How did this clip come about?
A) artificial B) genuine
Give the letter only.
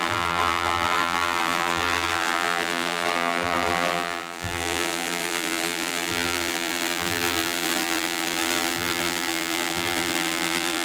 A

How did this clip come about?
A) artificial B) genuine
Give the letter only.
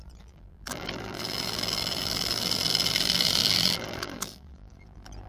A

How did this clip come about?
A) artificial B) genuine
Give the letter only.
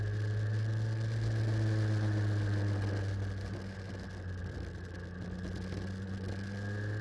B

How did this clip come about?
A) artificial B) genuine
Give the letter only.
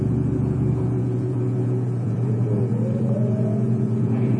A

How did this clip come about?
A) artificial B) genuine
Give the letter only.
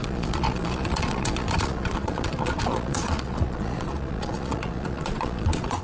A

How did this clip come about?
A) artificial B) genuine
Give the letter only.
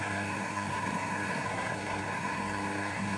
A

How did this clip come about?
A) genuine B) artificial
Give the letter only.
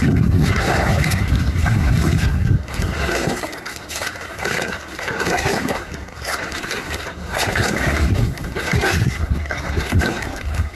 B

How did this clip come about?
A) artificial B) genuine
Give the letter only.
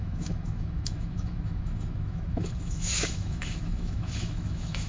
A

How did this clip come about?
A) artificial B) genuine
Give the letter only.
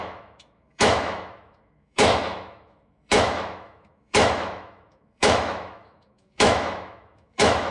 A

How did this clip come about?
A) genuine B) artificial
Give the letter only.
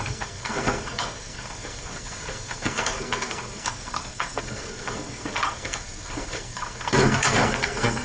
B